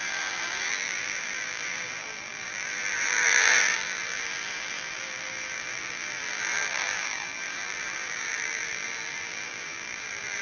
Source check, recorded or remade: remade